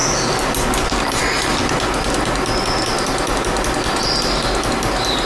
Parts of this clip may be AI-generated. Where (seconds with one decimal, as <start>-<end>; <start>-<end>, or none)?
none